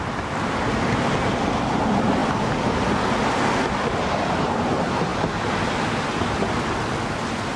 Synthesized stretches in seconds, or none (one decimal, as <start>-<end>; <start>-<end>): none